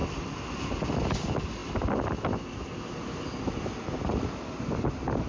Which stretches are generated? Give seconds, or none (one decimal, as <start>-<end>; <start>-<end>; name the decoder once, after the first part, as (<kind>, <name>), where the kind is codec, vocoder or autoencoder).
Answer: none